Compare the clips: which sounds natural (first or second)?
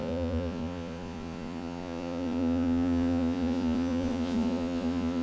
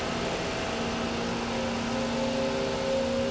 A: second